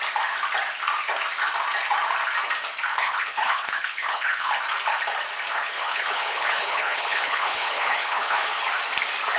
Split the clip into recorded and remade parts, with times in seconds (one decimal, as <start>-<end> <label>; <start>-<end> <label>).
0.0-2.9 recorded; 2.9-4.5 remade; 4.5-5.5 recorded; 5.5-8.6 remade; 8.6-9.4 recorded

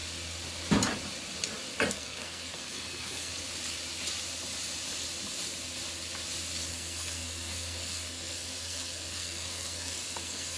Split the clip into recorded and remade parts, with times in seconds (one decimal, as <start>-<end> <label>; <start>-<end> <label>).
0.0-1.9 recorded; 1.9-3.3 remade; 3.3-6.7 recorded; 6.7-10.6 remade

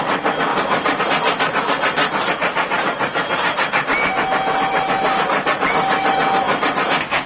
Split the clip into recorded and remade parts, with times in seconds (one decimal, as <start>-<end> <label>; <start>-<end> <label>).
0.0-0.5 recorded; 0.5-1.0 remade; 1.0-7.3 recorded